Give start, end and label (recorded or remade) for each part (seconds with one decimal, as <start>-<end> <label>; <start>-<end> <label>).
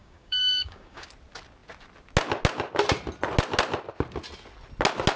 0.0-1.1 remade; 1.1-5.2 recorded